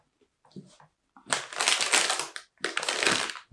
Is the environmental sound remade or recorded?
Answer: recorded